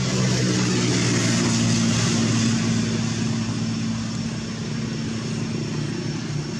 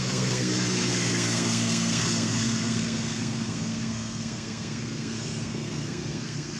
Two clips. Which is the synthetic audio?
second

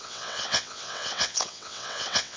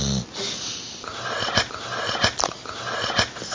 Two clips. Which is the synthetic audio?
first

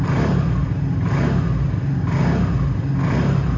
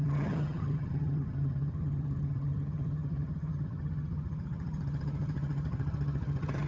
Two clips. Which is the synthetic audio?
second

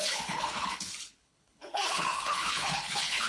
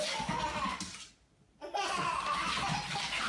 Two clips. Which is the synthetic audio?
first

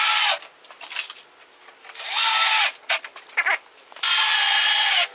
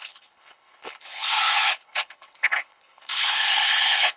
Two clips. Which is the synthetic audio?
second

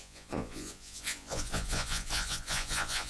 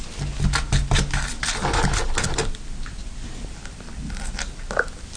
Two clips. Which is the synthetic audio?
first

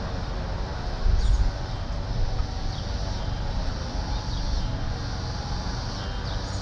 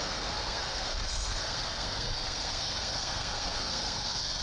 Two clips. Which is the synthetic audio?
second